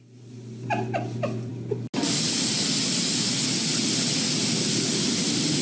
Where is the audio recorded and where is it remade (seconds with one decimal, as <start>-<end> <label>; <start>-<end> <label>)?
0.0-5.6 recorded